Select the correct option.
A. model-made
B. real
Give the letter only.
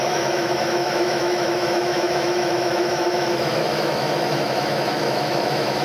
A